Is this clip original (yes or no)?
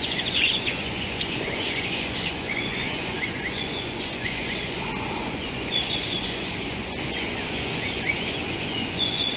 no